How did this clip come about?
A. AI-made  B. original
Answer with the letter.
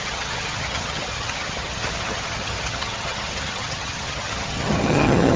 A